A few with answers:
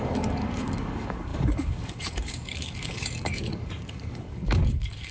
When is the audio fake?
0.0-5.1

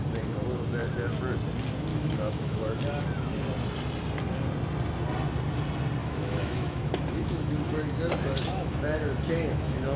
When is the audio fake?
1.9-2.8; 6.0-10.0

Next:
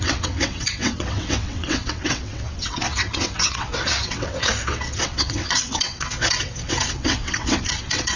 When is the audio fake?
0.0-8.2

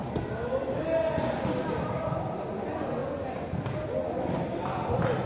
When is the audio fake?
none

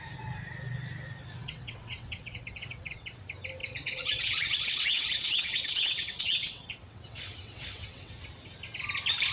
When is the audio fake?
1.4-3.2; 3.6-8.2

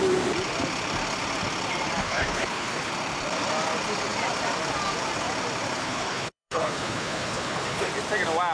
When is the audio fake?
2.0-2.9; 5.8-7.9

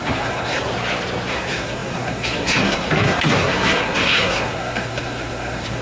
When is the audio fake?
0.0-0.7; 1.3-5.8

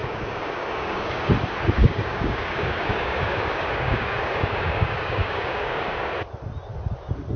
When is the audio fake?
0.0-1.3; 1.8-6.1